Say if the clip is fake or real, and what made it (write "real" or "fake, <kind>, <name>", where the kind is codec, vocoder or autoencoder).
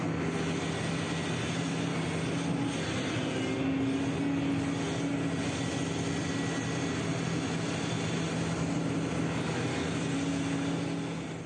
real